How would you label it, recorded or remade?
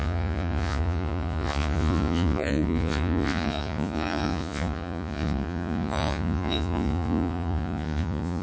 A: remade